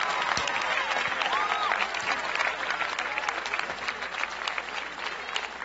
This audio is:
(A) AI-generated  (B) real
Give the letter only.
B